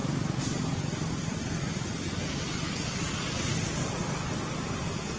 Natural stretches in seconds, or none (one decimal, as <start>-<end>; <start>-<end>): 0.0-5.2